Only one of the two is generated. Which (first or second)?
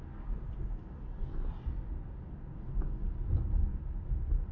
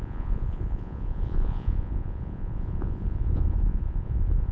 second